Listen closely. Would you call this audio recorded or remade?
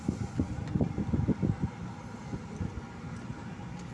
recorded